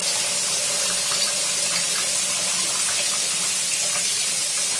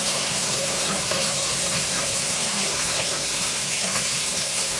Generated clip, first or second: second